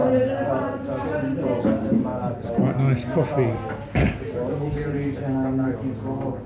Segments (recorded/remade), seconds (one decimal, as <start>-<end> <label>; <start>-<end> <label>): 0.0-6.5 recorded